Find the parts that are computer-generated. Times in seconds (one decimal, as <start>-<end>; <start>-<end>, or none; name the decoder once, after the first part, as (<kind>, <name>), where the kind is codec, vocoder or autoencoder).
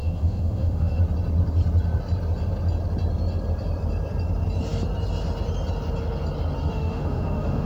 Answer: 0.0-1.0 (autoencoder, DAC-VAE); 6.7-7.7